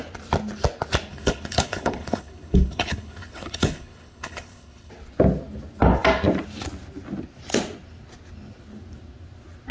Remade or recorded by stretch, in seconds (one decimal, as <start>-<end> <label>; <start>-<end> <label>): 0.0-1.1 recorded; 1.1-4.9 remade; 4.9-9.7 recorded